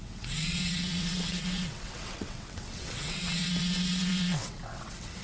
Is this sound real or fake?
fake